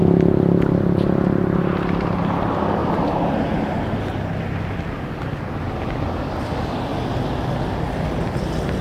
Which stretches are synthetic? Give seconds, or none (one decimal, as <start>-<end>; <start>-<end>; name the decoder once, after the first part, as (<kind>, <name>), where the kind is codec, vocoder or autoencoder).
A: 2.8-4.0 (vocoder, BigVGAN v2)

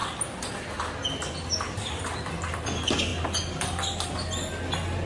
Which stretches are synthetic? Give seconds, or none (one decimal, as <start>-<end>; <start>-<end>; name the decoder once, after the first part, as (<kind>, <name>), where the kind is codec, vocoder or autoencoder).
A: 0.0-0.9 (vocoder, BigVGAN v2)

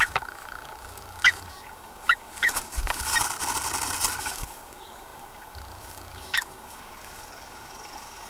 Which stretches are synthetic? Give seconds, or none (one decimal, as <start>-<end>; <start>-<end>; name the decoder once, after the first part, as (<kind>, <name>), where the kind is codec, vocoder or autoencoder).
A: 0.0-3.1 (codec, DAC); 4.2-8.3

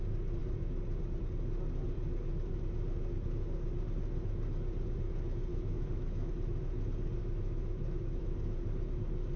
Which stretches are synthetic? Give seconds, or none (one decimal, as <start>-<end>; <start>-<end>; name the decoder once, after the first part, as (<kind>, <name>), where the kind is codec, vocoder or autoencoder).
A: 5.5-6.3 (autoencoder, DAC-VAE); 7.2-8.2

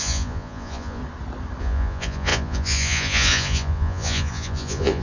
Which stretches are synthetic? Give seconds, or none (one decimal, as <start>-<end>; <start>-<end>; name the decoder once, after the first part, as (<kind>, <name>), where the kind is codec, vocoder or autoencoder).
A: 0.0-1.0 (vocoder, Vocos); 1.6-5.0

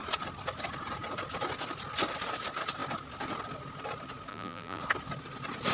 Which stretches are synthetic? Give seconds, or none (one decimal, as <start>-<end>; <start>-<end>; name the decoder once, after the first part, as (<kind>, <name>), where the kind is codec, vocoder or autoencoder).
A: 4.3-4.8 (vocoder, BigVGAN v2)

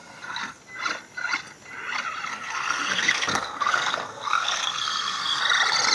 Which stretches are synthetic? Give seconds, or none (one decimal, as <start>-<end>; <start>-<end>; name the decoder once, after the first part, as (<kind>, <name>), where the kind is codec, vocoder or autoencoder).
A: 0.0-0.6 (codec, SNAC); 2.3-5.4